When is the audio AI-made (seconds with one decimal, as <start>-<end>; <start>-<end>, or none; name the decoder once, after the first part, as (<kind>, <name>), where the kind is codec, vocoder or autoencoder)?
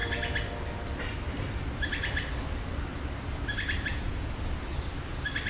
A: 3.9-4.4 (vocoder, Vocos)